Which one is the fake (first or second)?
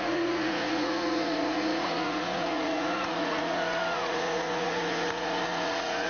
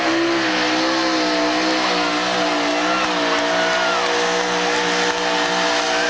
first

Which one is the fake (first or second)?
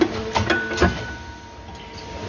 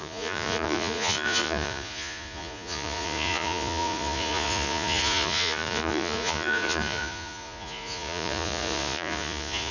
second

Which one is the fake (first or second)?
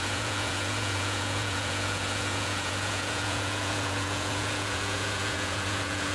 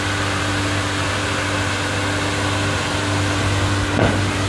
first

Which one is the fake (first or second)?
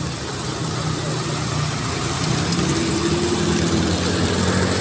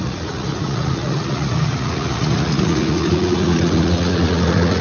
second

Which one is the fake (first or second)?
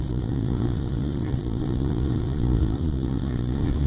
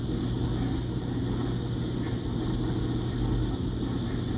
first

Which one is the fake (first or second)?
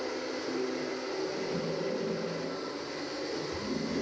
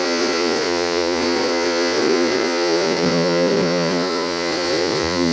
second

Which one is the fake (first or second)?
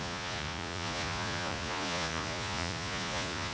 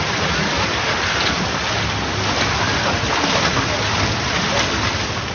first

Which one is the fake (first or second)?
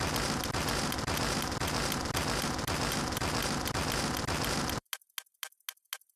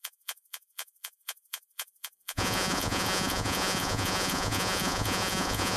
second